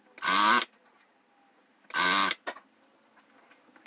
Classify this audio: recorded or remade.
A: recorded